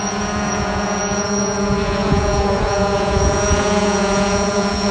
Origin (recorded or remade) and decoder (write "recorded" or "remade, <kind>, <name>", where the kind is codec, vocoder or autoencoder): remade, vocoder, Vocos